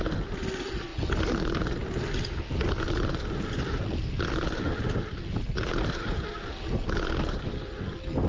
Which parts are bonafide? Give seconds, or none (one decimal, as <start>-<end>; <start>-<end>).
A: 0.0-8.3